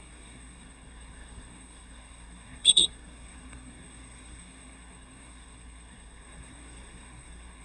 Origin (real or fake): fake